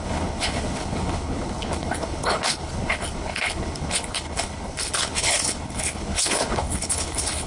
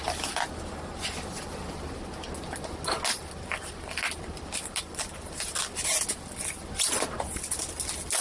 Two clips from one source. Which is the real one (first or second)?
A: second